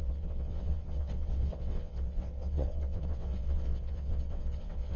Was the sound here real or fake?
fake